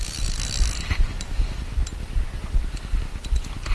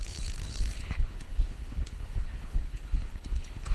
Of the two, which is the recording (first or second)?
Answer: first